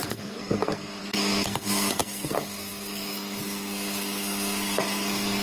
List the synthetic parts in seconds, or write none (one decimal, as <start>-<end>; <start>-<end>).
0.0-5.4